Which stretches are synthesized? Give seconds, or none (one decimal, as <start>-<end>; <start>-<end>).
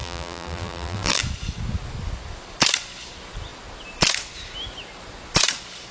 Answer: 0.0-1.2